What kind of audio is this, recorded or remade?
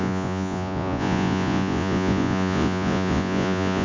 remade